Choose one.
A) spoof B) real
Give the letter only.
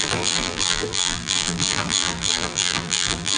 A